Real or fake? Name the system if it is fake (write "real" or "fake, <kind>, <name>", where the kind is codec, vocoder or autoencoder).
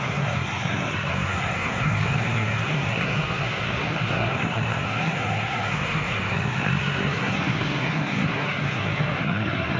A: fake, codec, SNAC